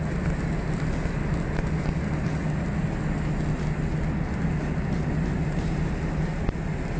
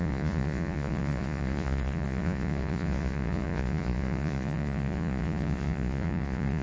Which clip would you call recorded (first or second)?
first